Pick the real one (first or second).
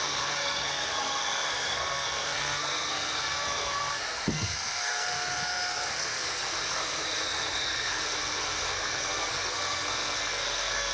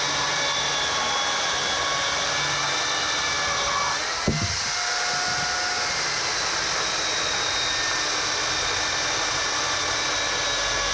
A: second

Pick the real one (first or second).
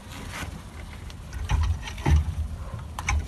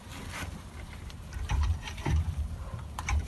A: first